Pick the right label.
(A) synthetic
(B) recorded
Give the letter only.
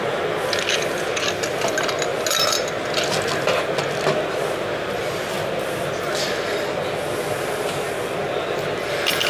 B